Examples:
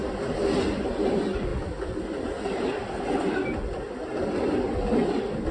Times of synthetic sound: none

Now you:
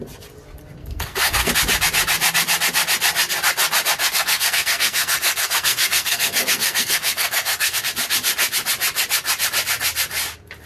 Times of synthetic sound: 0.8-1.5 (codec, SNAC); 4.0-7.8

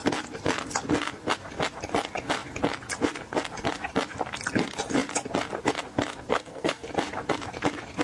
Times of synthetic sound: 6.3-6.9 (codec, SNAC)

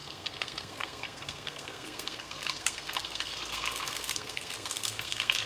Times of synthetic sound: 0.0-5.5 (codec, SNAC)

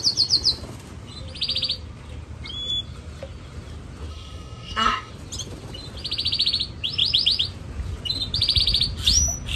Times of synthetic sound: 4.1-5.1 (codec, SNAC)